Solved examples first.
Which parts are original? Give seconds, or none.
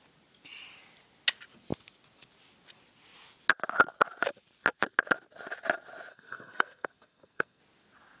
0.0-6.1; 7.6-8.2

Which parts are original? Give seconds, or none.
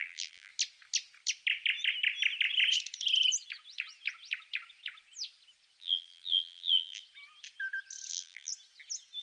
0.5-5.8; 7.0-8.1; 8.5-9.2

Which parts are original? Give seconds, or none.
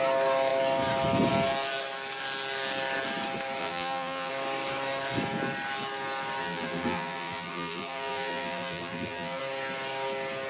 0.0-3.6; 4.3-6.4; 9.4-10.5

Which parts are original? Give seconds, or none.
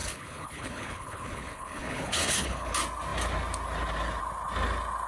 2.7-5.1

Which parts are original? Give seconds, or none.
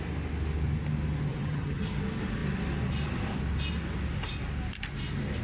0.0-1.3; 2.0-5.4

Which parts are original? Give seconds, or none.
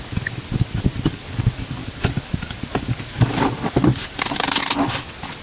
0.0-1.8; 4.6-5.4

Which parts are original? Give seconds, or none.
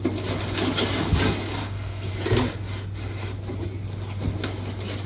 0.0-1.6; 2.1-5.1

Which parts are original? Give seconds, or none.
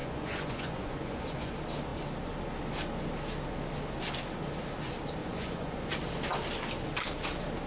1.5-5.2; 5.9-7.7